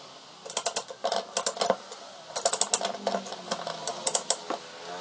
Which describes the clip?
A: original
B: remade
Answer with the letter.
A